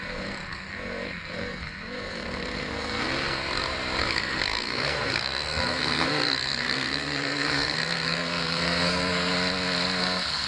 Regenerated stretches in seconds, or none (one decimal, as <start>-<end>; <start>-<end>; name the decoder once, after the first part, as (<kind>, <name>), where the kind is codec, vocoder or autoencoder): 0.0-3.4 (codec, SNAC); 4.0-9.3; 10.0-10.5